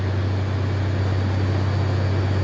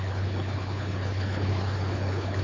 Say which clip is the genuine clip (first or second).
first